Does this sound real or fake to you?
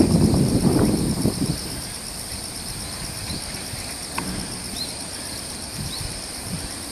real